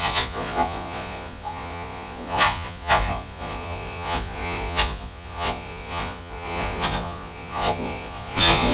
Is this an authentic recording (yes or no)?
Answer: no